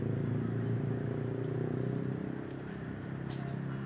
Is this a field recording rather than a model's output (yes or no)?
yes